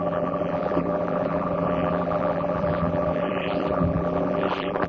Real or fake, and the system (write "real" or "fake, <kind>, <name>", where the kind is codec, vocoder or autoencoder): fake, vocoder, BigVGAN v2